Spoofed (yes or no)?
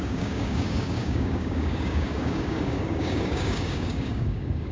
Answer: yes